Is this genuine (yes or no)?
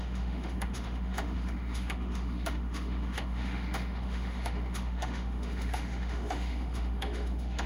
no